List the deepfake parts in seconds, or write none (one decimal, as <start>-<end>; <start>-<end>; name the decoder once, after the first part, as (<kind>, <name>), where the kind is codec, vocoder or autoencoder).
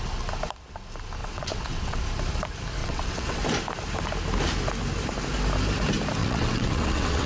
1.2-2.0 (vocoder, WaveNeXt); 2.8-3.4; 6.2-7.3